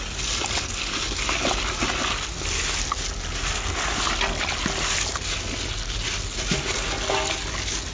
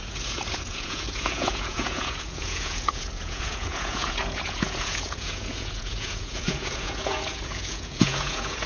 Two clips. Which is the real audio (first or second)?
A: first